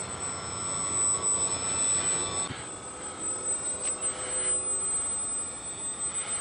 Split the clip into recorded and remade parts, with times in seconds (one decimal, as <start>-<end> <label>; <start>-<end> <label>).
0.0-6.4 recorded